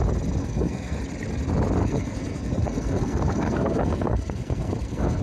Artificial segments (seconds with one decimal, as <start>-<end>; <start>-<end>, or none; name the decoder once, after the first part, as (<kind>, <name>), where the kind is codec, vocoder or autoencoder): 0.4-1.0 (codec, SNAC); 1.8-5.2